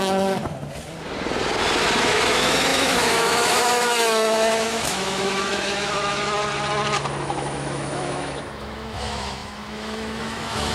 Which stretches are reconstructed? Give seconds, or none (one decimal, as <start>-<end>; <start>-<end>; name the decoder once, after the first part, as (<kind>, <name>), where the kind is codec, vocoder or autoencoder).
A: 0.0-0.4 (autoencoder, DAC-VAE); 2.0-6.4; 7.2-10.7